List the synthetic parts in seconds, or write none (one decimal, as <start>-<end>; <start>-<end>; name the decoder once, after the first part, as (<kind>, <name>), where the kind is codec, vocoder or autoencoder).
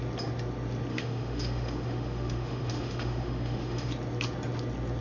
0.9-3.9 (autoencoder, DAC-VAE)